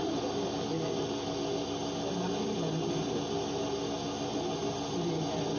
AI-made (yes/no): no